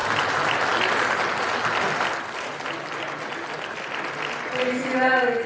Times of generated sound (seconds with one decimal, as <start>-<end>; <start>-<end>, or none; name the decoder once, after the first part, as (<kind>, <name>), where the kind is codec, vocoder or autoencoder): none